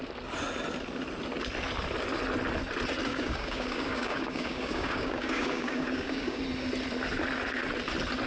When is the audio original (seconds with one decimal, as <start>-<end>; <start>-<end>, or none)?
0.0-3.1; 6.4-8.3